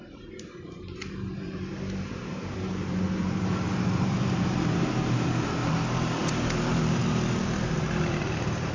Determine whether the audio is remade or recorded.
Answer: remade